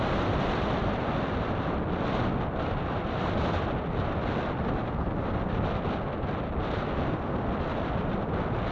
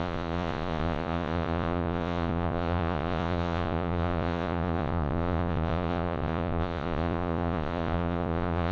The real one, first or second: first